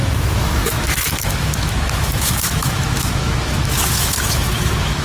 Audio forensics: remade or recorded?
remade